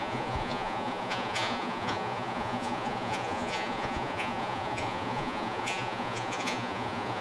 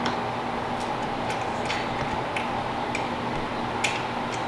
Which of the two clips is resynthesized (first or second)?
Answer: first